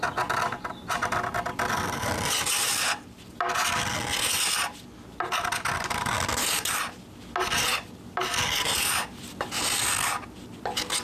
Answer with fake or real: real